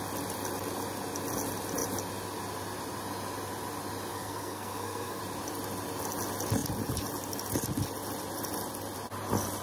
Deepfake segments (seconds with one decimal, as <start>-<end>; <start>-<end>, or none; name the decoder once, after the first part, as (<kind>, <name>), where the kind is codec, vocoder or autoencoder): 4.1-5.2 (codec, SNAC)